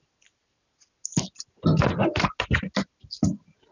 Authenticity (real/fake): real